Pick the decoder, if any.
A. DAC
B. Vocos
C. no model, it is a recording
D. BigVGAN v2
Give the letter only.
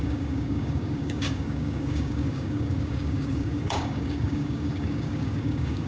A